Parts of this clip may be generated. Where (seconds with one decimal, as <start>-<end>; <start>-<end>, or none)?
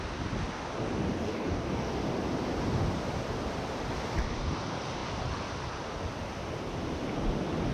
1.1-1.9